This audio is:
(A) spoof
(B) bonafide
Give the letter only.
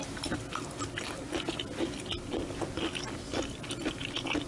B